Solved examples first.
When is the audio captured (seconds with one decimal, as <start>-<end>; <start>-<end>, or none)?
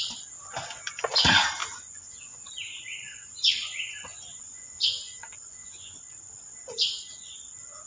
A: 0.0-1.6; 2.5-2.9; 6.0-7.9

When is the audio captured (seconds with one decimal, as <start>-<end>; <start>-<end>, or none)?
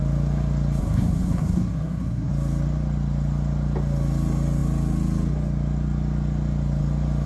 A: 0.0-0.8; 2.3-7.3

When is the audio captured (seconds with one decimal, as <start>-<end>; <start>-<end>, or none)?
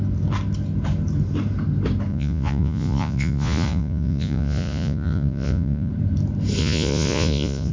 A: 0.0-2.1; 5.9-6.6